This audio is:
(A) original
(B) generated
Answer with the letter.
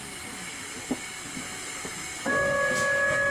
A